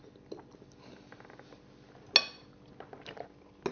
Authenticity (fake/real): real